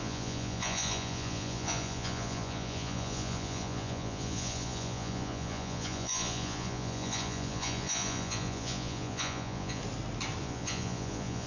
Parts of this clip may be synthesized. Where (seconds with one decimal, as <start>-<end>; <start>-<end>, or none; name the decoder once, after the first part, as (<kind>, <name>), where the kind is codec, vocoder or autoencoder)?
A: 0.0-9.8 (vocoder, Vocos); 10.4-11.5